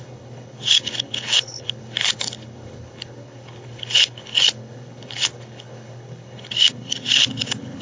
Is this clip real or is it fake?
fake